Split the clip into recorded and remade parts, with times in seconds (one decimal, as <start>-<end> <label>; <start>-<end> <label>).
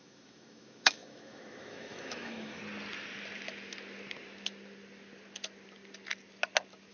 0.0-2.6 remade; 2.6-6.9 recorded